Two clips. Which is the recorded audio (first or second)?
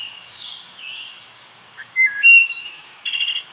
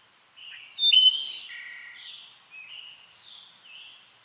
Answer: second